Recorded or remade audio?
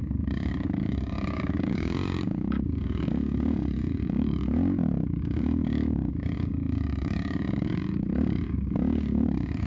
remade